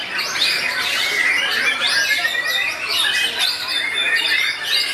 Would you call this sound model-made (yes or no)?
no